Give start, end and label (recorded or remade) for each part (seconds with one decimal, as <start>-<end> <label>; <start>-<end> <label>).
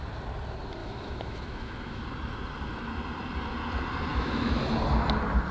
0.0-0.8 recorded; 0.8-2.0 remade; 2.0-4.1 recorded; 4.1-4.6 remade; 4.6-5.5 recorded